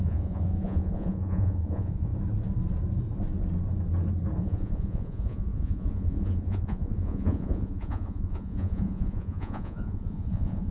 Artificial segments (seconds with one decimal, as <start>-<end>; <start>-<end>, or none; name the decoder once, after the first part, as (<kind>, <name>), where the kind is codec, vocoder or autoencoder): 0.0-2.1 (vocoder, Vocos); 4.4-10.7